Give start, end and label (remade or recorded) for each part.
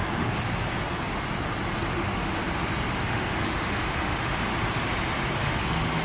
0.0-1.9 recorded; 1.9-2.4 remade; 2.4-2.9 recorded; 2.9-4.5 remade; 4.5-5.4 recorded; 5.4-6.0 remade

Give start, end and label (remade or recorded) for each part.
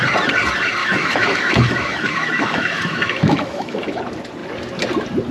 0.0-0.8 recorded; 0.8-4.0 remade; 4.0-5.3 recorded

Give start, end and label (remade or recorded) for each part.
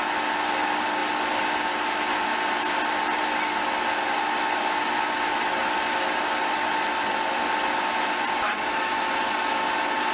0.0-10.1 recorded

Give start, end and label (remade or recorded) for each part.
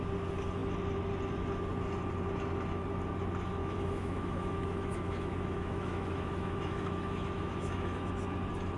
0.0-3.6 recorded; 3.6-8.1 remade; 8.1-8.8 recorded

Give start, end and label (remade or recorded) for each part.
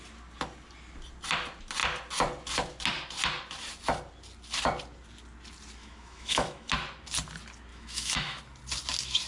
0.0-5.8 recorded; 5.8-6.7 remade; 6.7-7.7 recorded; 7.7-8.4 remade; 8.4-9.3 recorded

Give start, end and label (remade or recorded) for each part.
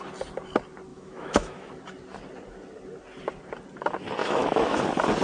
0.0-0.9 recorded; 0.9-1.7 remade; 1.7-4.2 recorded; 4.2-4.8 remade; 4.8-5.2 recorded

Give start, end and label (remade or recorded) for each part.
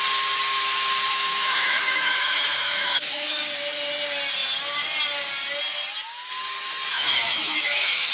0.0-1.1 recorded; 1.1-3.4 remade; 3.4-6.9 recorded; 6.9-8.1 remade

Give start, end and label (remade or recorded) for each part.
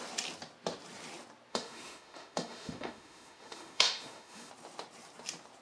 0.0-1.5 recorded; 1.5-4.5 remade; 4.5-5.6 recorded